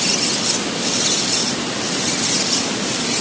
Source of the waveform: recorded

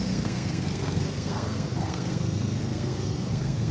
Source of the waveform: remade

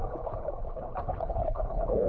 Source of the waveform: remade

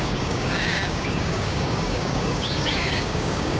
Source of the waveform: remade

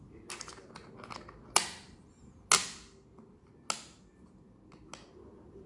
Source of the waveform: recorded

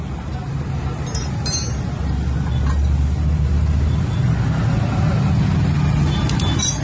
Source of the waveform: recorded